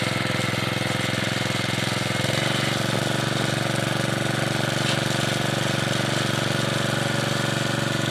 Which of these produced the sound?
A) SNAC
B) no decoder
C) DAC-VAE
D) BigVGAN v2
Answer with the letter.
B